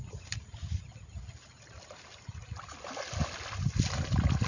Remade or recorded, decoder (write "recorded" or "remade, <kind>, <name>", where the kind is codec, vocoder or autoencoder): recorded